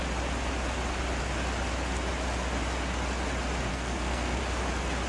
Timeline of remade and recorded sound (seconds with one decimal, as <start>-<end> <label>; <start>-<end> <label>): 0.0-3.7 recorded; 3.7-4.4 remade; 4.4-5.1 recorded